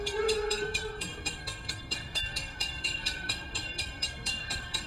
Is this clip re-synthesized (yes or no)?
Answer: yes